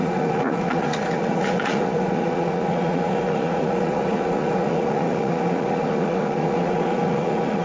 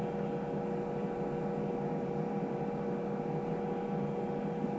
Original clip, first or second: second